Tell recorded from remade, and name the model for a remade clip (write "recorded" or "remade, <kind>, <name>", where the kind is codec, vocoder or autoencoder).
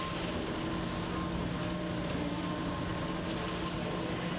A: recorded